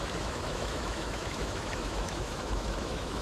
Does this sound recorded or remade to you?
remade